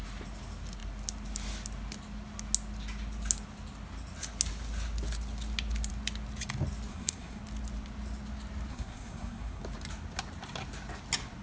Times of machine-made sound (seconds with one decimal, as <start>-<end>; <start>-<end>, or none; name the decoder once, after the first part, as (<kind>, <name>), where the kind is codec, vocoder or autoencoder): 6.9-7.4 (codec, SNAC); 8.7-9.6